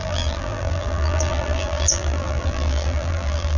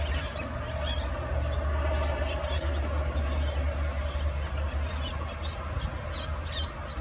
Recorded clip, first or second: second